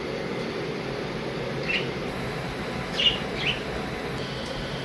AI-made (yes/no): no